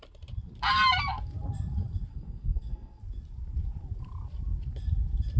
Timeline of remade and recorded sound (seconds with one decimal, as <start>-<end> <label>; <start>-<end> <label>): 0.0-2.1 recorded; 2.1-3.0 remade; 3.0-5.4 recorded